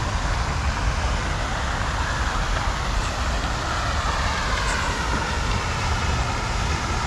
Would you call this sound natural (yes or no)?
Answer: yes